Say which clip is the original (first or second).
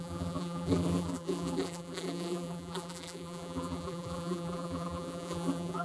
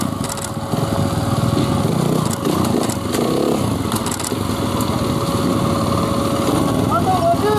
second